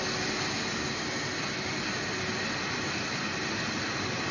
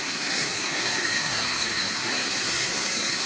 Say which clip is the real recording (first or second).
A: first